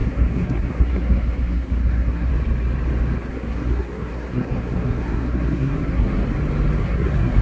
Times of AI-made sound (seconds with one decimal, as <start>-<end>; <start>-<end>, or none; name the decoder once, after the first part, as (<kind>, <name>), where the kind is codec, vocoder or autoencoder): 0.0-2.3 (codec, SNAC); 3.3-6.2; 6.8-7.4